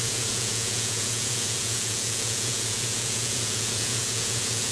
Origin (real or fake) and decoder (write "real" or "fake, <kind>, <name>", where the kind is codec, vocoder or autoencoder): fake, vocoder, Vocos